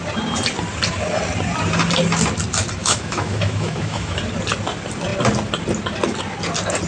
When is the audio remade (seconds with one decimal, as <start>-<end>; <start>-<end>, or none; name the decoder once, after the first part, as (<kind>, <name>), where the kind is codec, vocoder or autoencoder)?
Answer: 2.8-4.2 (autoencoder, DAC-VAE)